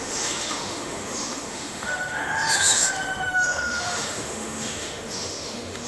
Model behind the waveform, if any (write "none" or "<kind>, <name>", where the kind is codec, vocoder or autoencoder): autoencoder, DAC-VAE